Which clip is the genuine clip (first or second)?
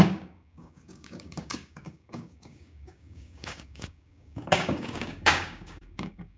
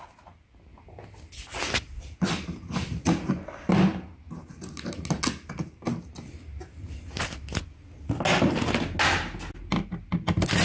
second